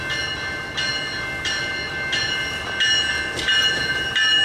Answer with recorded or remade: recorded